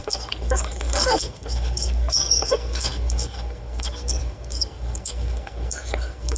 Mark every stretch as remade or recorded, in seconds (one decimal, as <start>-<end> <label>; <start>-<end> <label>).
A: 0.0-6.4 remade